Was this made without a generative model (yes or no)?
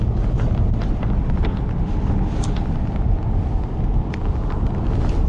yes